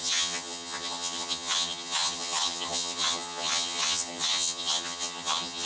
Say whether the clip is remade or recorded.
remade